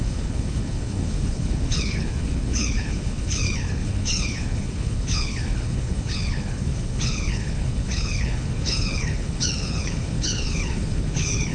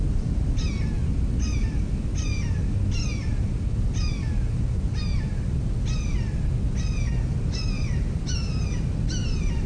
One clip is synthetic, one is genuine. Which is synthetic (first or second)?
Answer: first